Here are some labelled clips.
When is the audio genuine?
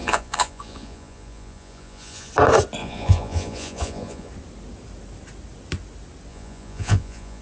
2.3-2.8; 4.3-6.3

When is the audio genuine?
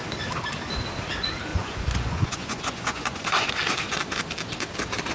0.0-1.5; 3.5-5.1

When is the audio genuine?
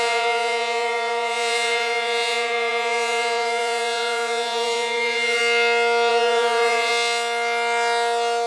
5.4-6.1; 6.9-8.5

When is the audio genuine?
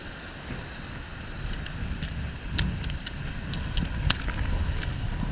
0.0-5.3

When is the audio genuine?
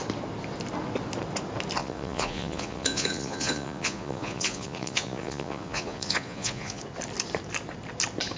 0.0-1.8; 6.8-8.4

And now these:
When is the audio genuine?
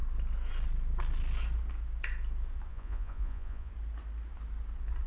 0.0-2.7; 3.7-5.1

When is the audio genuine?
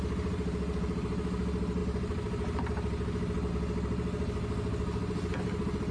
0.0-5.9